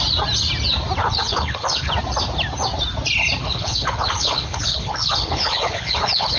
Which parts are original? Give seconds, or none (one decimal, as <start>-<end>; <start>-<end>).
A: 0.0-1.0; 1.9-3.4